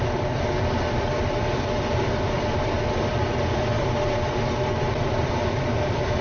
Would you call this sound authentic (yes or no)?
no